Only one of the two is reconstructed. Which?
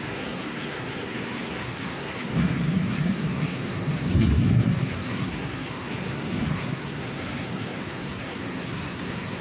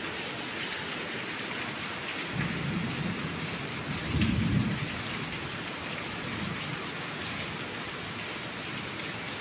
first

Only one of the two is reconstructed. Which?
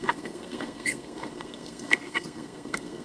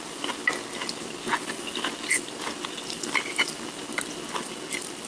first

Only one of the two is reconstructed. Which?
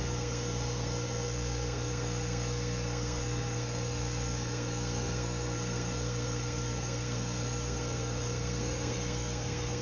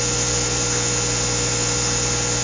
first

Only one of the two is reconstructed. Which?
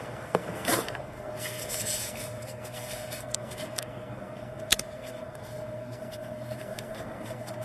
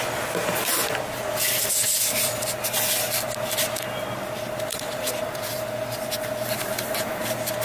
first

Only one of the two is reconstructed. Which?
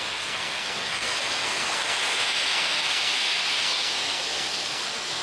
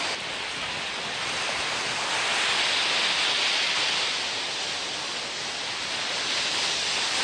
first